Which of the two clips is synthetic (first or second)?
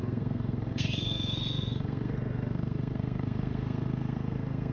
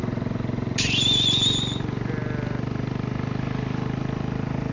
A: first